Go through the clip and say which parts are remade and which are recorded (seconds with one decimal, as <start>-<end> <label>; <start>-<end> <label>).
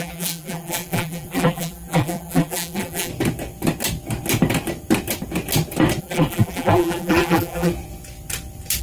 0.0-3.1 remade; 3.1-6.0 recorded; 6.0-7.7 remade; 7.7-8.8 recorded